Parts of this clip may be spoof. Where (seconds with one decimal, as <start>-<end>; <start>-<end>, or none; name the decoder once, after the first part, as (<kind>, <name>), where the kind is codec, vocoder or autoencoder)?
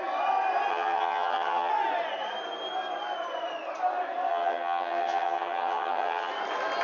0.7-1.7 (vocoder, HiFi-GAN); 4.3-6.3